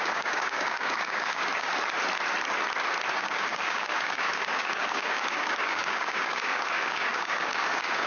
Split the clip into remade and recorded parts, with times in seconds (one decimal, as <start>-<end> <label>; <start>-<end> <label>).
0.0-1.7 remade; 1.7-3.1 recorded; 3.1-8.1 remade

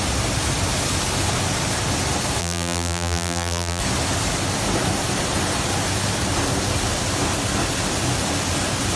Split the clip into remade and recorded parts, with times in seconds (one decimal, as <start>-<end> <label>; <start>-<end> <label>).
0.0-2.4 recorded; 2.4-3.8 remade; 3.8-9.0 recorded

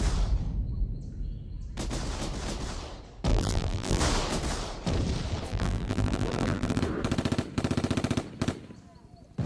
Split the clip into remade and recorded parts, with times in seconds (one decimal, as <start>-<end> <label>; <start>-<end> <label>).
0.0-3.3 recorded; 3.3-4.0 remade; 4.0-5.5 recorded; 5.5-6.8 remade; 6.8-9.5 recorded

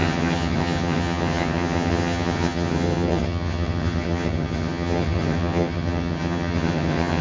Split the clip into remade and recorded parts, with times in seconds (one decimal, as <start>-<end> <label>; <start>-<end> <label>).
0.0-7.2 remade

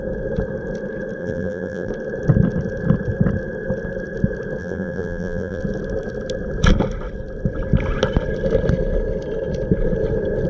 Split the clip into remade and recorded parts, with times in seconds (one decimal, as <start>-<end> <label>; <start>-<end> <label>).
0.0-1.2 recorded; 1.2-1.9 remade; 1.9-4.6 recorded; 4.6-5.6 remade; 5.6-10.5 recorded